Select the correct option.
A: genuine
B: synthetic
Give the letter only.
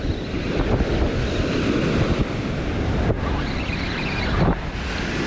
A